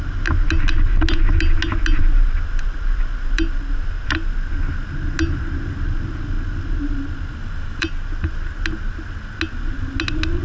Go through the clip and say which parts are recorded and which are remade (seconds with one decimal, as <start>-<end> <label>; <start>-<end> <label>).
0.0-7.4 recorded; 7.4-7.9 remade; 7.9-10.4 recorded